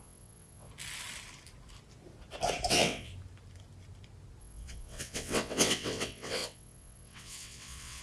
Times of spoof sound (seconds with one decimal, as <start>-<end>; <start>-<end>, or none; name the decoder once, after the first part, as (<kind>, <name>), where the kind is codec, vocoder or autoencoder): 0.0-0.7 (vocoder, WaveNeXt); 2.7-3.1; 4.4-8.0